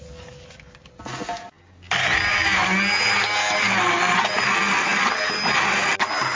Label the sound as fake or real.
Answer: real